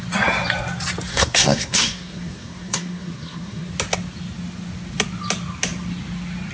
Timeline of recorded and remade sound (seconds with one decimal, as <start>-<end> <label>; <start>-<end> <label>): 0.0-1.1 recorded; 1.1-3.7 remade; 3.7-6.5 recorded